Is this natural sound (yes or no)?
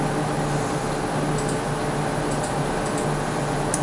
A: yes